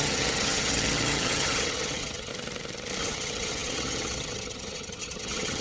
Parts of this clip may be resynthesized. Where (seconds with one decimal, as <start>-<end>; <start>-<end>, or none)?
0.0-2.3; 3.0-5.6